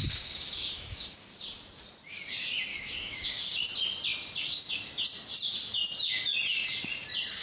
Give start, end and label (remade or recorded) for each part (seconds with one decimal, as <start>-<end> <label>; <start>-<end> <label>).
0.0-1.4 remade; 1.4-2.7 recorded; 2.7-3.4 remade; 3.4-7.4 recorded